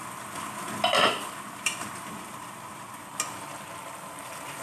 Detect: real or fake real